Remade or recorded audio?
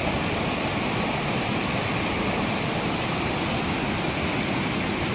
recorded